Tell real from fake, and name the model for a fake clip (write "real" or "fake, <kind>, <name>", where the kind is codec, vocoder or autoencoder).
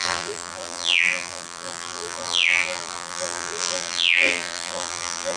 fake, vocoder, BigVGAN v2